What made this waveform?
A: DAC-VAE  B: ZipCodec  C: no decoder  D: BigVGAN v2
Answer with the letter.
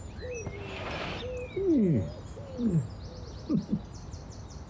C